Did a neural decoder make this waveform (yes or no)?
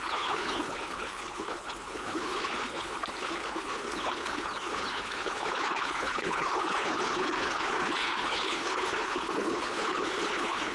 yes